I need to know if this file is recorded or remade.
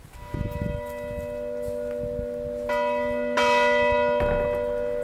recorded